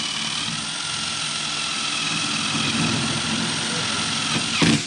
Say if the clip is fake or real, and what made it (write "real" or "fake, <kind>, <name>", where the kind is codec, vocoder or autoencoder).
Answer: real